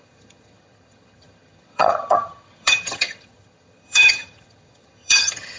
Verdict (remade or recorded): remade